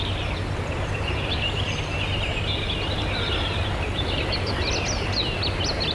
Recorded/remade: recorded